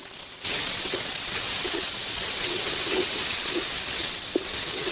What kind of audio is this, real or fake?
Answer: fake